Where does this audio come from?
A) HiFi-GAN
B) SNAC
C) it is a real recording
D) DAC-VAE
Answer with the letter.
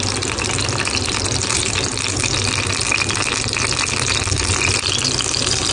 C